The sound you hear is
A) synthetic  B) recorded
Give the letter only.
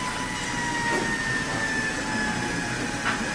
B